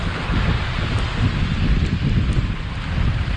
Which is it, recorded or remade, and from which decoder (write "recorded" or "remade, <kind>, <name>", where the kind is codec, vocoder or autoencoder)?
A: recorded